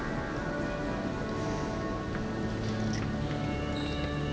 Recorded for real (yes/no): yes